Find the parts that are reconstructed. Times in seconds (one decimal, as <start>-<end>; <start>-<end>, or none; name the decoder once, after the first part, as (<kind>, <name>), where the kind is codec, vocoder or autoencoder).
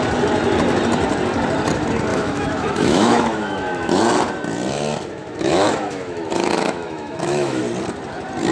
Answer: 2.1-4.0 (autoencoder, DAC-VAE); 5.2-7.6